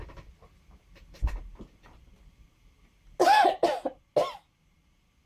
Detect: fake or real real